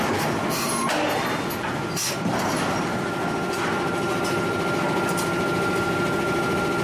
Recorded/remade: recorded